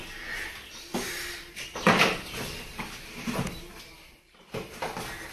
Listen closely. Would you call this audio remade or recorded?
remade